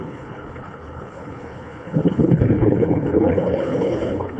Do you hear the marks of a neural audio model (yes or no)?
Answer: yes